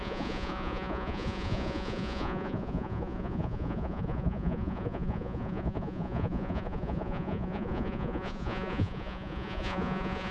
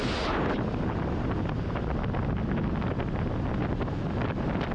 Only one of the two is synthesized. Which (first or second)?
first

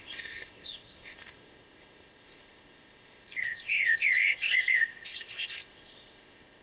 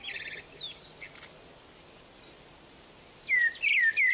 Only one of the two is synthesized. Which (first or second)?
first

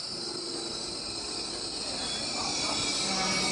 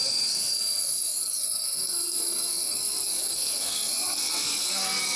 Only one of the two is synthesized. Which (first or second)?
second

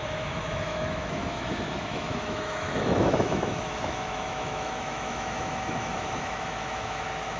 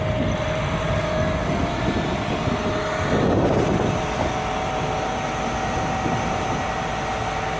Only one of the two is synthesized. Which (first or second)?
first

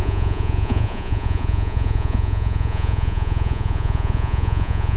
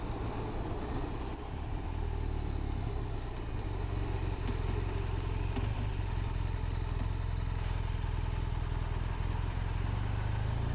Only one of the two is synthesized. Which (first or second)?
first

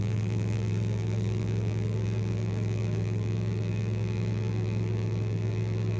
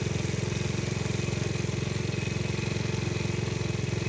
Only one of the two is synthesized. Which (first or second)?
first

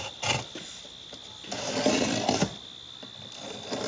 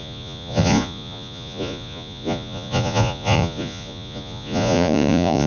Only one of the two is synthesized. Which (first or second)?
second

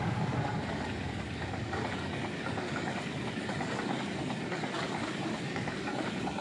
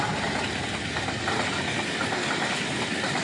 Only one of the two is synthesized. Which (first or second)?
first